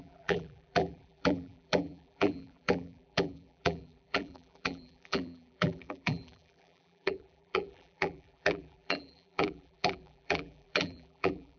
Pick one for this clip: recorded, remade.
remade